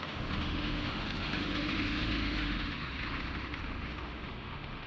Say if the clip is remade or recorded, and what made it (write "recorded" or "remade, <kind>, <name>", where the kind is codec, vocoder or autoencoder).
remade, autoencoder, DAC-VAE